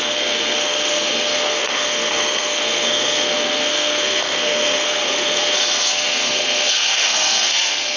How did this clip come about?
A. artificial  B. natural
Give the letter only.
A